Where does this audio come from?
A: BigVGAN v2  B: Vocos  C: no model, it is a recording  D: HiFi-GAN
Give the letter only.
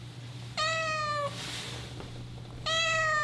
C